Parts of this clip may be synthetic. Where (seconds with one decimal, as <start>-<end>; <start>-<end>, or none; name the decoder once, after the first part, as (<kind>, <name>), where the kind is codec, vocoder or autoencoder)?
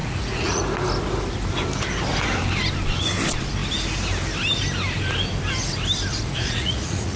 0.0-0.6 (vocoder, Vocos); 6.1-7.2